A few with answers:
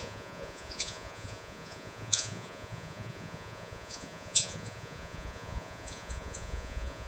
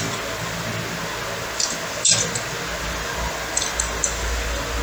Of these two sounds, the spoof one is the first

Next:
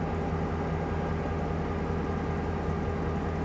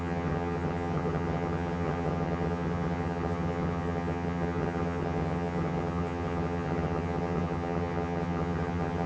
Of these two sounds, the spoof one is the second